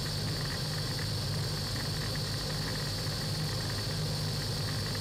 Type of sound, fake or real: real